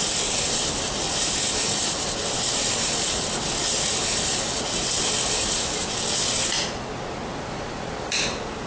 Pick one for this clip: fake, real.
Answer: real